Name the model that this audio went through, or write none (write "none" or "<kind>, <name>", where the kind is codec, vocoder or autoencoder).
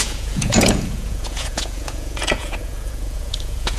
vocoder, Vocos